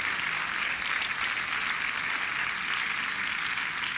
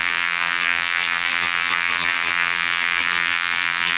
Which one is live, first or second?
first